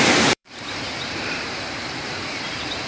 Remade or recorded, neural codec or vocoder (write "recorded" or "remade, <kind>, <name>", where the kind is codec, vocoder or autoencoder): remade, vocoder, BigVGAN v2